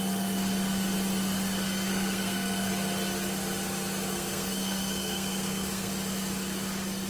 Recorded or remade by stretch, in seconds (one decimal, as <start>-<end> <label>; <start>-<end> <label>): 0.0-1.9 recorded; 1.9-2.7 remade; 2.7-4.1 recorded; 4.1-5.9 remade; 5.9-7.1 recorded

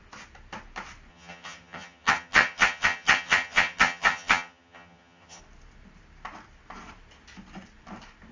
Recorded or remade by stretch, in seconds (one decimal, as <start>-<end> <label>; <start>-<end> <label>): 0.0-1.1 recorded; 1.1-5.4 remade; 5.4-8.3 recorded

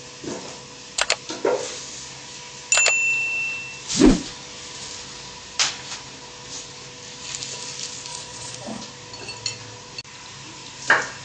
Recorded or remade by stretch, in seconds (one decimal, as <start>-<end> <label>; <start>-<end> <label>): 0.0-8.1 recorded; 8.1-8.8 remade; 8.8-11.2 recorded

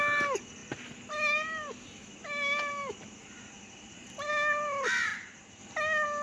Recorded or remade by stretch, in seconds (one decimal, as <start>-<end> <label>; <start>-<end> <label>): 0.0-5.1 recorded; 5.1-5.6 remade; 5.6-6.2 recorded